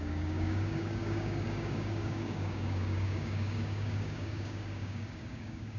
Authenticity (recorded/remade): remade